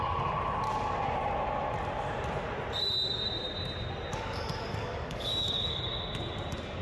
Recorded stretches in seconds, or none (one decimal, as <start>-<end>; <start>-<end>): 0.0-4.1; 5.8-6.8